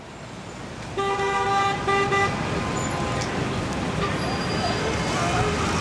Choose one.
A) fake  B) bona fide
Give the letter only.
B